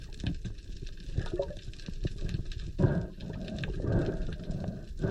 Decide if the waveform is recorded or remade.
recorded